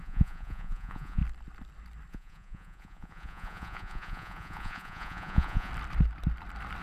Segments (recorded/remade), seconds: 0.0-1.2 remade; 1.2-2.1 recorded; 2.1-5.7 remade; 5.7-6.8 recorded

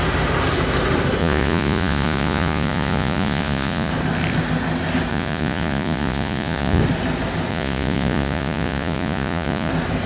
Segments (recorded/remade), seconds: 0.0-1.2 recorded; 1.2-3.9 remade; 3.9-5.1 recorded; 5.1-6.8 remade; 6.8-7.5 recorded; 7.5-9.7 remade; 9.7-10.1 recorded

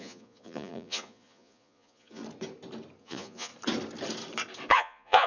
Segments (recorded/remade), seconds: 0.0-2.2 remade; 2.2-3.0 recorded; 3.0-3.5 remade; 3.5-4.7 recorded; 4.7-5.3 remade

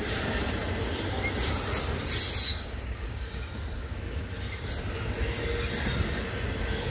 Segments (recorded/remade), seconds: 0.0-2.5 recorded; 2.5-3.4 remade; 3.4-6.9 recorded

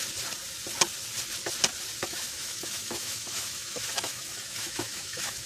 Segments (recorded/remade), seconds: 0.0-2.0 recorded; 2.0-5.5 remade

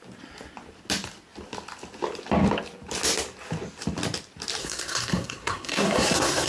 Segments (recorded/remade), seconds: 0.0-4.6 recorded; 4.6-6.5 remade